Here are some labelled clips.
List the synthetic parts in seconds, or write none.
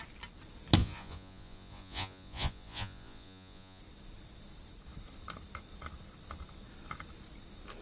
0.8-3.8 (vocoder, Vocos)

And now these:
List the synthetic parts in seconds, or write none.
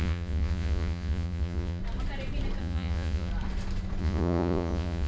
0.0-1.8 (vocoder, Vocos); 2.6-3.3; 4.0-5.1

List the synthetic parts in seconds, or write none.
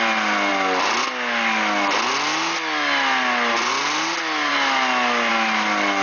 none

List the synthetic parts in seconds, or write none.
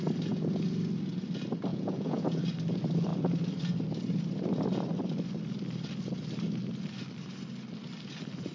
1.7-2.4 (vocoder, Vocos)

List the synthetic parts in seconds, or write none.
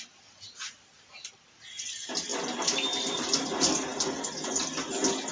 none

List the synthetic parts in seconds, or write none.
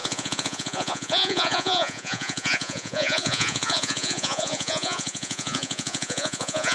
0.0-6.7 (vocoder, Vocos)